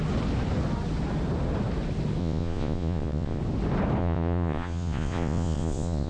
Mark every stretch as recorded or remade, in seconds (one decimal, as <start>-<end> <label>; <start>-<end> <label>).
0.0-2.2 recorded; 2.2-3.4 remade; 3.4-4.0 recorded; 4.0-6.1 remade